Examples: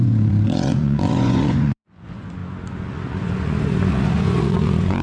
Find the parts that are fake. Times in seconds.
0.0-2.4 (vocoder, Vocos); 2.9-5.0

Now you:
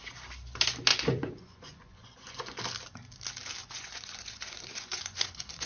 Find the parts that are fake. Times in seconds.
0.9-2.6 (vocoder, Vocos); 3.6-5.7

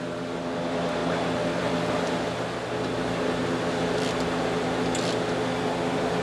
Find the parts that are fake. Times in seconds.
none

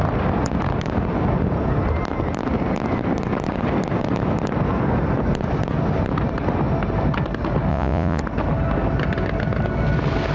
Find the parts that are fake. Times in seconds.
7.7-8.2 (vocoder, Vocos)

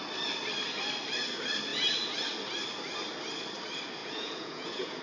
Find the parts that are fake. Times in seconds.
4.0-5.0 (vocoder, Vocos)

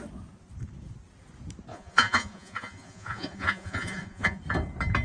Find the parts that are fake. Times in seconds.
1.7-4.4 (vocoder, Vocos)